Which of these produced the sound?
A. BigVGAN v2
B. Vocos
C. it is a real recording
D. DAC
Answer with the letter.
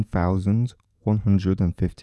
D